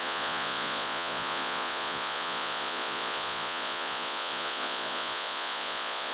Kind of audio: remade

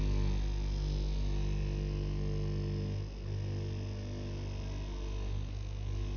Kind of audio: recorded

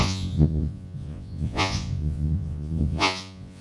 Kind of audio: remade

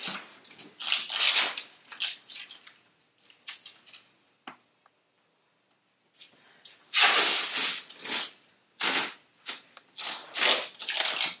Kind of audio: recorded